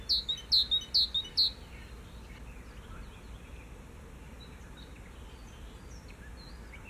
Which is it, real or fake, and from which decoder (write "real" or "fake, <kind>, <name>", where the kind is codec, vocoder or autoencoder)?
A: real